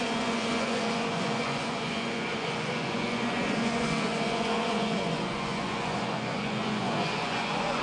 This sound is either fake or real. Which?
fake